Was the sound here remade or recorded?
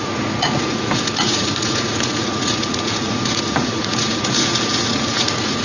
remade